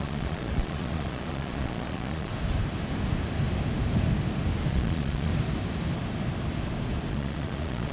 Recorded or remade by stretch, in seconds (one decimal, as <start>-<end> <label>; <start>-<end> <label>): 0.0-2.3 remade; 2.3-4.7 recorded; 4.7-5.3 remade; 5.3-7.1 recorded; 7.1-7.9 remade